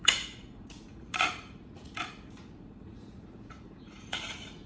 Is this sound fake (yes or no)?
yes